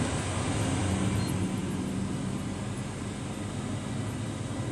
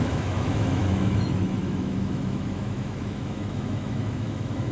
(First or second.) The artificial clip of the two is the second